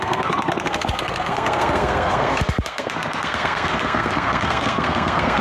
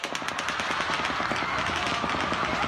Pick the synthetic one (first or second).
first